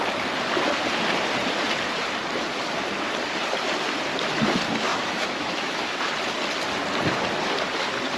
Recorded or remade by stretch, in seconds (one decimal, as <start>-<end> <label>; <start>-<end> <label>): 0.0-4.9 recorded; 4.9-6.0 remade; 6.0-8.2 recorded